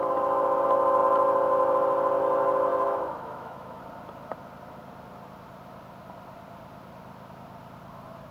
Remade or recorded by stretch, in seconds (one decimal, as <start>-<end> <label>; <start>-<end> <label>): 0.0-2.7 recorded; 2.7-3.8 remade; 3.8-8.3 recorded